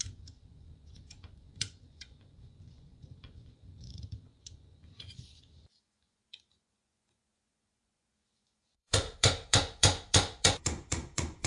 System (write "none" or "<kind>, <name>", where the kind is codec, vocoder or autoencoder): vocoder, Vocos